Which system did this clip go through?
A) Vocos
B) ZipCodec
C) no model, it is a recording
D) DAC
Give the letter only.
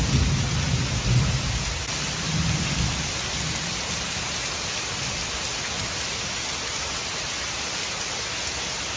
C